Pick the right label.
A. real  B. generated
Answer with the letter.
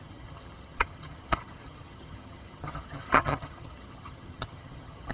B